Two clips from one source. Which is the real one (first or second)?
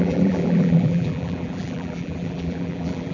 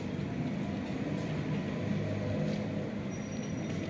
second